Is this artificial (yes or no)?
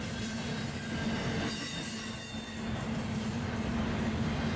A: no